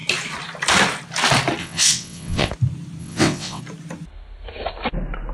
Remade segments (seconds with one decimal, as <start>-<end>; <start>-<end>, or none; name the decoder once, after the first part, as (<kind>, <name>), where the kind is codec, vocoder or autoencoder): 1.6-2.5 (vocoder, WaveNeXt); 3.0-3.6